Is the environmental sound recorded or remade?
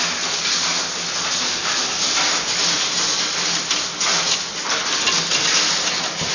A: recorded